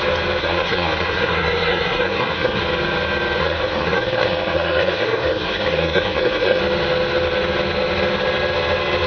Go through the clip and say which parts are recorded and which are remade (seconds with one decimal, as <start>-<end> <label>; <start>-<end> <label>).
0.0-0.4 recorded; 0.4-2.6 remade; 2.6-3.4 recorded; 3.4-6.6 remade; 6.6-9.1 recorded